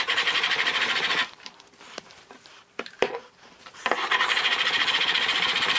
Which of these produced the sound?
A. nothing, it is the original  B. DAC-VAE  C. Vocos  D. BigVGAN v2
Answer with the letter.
D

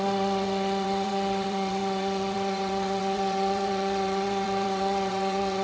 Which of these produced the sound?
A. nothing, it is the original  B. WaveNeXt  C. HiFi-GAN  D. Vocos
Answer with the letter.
B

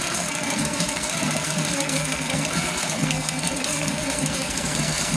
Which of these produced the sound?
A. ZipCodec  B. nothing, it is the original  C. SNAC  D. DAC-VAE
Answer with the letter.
C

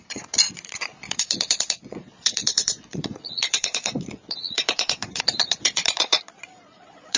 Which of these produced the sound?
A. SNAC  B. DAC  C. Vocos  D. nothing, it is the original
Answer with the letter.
C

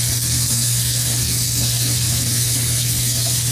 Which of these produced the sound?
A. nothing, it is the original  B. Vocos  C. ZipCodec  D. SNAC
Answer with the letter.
D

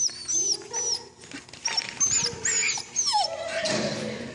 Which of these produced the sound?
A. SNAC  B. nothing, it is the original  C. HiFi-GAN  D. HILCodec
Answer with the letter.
B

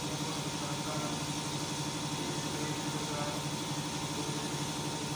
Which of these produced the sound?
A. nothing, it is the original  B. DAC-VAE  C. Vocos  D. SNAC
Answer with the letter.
A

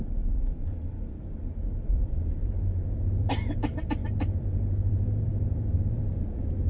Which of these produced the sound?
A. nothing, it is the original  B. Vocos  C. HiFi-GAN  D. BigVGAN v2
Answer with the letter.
D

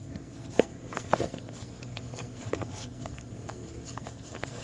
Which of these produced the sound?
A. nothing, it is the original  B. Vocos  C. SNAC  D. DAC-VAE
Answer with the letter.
C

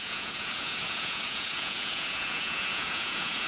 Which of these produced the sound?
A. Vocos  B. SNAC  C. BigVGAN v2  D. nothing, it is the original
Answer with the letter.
A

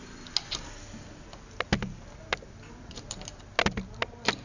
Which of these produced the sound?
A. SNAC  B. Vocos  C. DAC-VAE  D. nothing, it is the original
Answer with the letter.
D